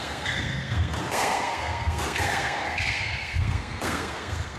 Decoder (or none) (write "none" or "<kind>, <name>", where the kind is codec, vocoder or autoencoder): codec, SNAC